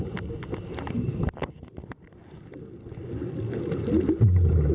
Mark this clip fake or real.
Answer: real